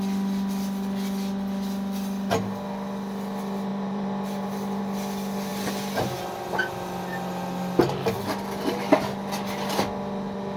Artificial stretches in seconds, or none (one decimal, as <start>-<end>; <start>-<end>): 3.7-4.8